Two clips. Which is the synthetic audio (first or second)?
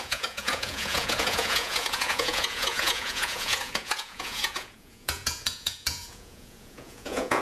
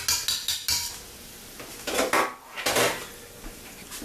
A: first